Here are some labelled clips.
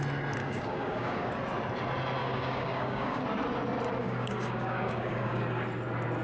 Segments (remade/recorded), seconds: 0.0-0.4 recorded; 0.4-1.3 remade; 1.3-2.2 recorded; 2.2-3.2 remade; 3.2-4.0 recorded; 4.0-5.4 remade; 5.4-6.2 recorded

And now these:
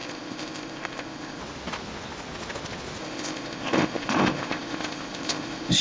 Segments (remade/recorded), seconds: 0.0-1.4 remade; 1.4-3.0 recorded; 3.0-5.8 remade

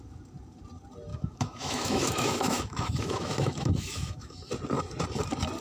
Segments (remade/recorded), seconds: 0.0-1.1 recorded; 1.1-4.5 remade; 4.5-5.6 recorded

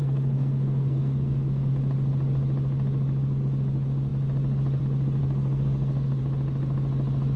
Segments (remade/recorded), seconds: 0.0-1.7 remade; 1.7-5.2 recorded; 5.2-6.2 remade; 6.2-7.4 recorded

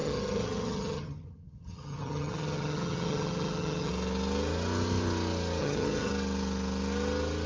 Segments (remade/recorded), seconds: 0.0-3.9 remade; 3.9-5.6 recorded; 5.6-6.1 remade; 6.1-7.5 recorded

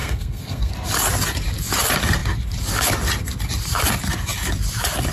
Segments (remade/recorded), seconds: 0.0-0.7 remade; 0.7-5.1 recorded

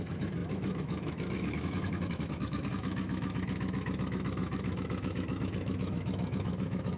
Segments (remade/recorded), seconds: 0.0-7.0 remade